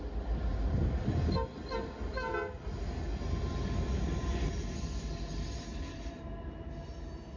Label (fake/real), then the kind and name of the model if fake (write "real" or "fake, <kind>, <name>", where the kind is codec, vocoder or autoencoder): real